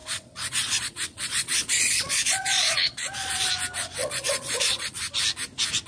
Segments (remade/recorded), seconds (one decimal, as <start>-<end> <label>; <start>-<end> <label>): 0.0-3.5 remade; 3.5-4.0 recorded; 4.0-5.0 remade; 5.0-5.9 recorded